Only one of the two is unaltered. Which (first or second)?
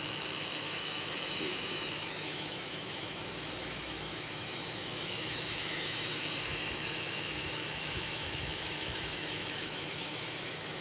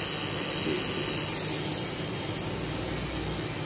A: second